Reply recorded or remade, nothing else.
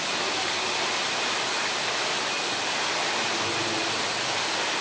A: recorded